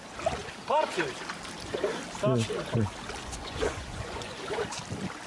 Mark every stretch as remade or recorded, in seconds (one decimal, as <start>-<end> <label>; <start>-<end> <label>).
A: 0.0-3.2 recorded; 3.2-4.4 remade; 4.4-5.3 recorded